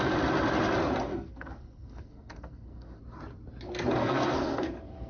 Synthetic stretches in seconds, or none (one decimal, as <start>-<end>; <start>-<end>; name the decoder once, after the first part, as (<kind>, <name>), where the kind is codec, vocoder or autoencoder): 1.1-3.0 (codec, SNAC); 4.0-5.1